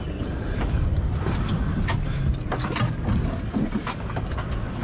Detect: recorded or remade recorded